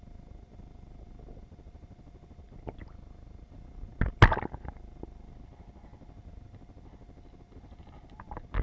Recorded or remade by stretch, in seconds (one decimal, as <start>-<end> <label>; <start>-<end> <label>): 0.0-8.6 recorded